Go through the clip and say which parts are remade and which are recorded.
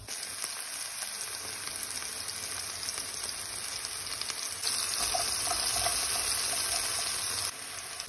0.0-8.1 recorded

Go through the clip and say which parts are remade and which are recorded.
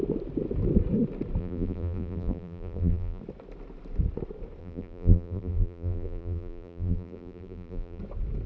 0.0-1.4 recorded; 1.4-3.2 remade; 3.2-4.6 recorded; 4.6-8.0 remade; 8.0-8.5 recorded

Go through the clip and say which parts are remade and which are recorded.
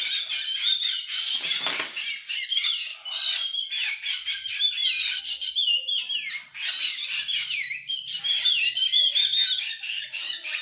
0.0-2.9 recorded; 2.9-5.2 remade; 5.2-6.5 recorded; 6.5-7.9 remade; 7.9-10.6 recorded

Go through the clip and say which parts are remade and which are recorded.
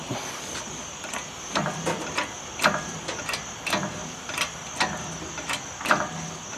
0.0-6.6 recorded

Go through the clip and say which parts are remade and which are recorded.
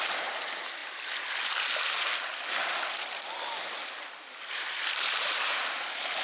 0.0-6.2 recorded